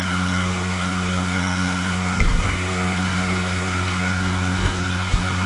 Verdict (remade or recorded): remade